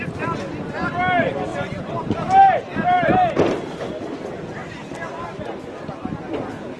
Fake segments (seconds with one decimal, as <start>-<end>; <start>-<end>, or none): 1.5-3.9